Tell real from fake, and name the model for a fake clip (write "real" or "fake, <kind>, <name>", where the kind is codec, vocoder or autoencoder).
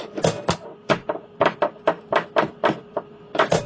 real